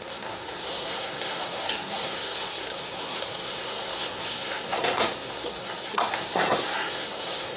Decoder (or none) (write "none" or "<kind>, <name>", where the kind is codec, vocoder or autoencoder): codec, SNAC